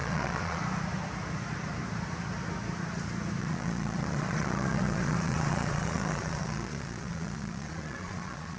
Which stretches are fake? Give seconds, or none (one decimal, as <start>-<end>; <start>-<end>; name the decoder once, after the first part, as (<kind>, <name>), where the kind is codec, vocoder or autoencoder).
0.0-0.6 (vocoder, Vocos); 3.4-8.6